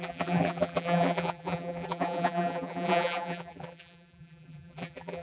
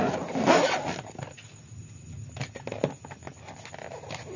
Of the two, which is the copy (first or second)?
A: first